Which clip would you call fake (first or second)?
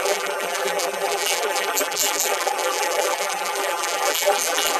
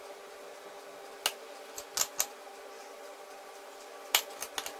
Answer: first